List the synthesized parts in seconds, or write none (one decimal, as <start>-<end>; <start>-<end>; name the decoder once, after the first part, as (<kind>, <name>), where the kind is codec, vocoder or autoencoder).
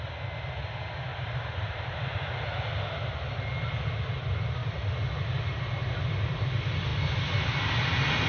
1.1-2.3 (vocoder, BigVGAN v2)